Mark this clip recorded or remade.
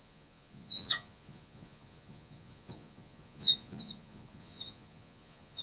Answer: remade